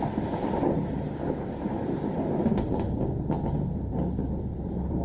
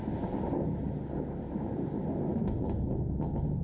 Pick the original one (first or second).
second